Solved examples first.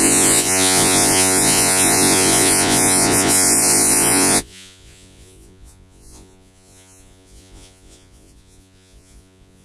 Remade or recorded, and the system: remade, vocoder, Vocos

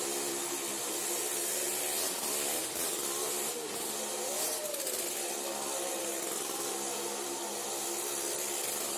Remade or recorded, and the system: recorded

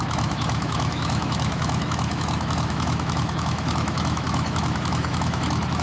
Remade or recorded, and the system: remade, autoencoder, DAC-VAE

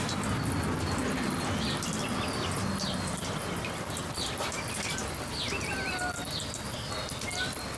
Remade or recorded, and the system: recorded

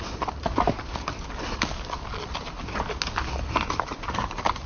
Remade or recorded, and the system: recorded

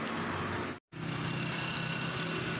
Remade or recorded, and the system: recorded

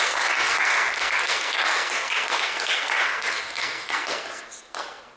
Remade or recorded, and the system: remade, codec, SNAC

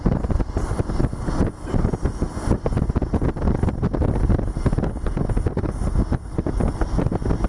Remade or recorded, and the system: recorded